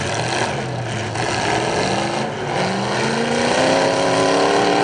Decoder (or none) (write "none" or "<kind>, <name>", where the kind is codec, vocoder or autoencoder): none